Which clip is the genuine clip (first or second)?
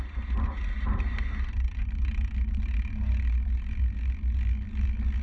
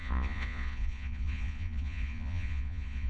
first